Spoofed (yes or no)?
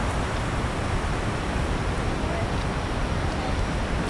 yes